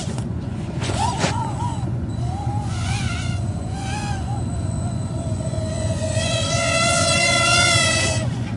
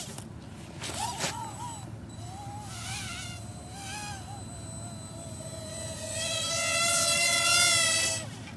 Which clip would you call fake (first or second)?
first